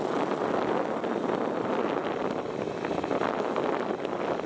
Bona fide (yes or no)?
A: yes